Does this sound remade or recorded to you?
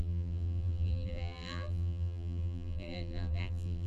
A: remade